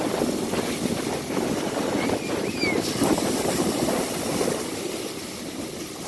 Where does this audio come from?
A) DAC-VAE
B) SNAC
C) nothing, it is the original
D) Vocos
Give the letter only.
C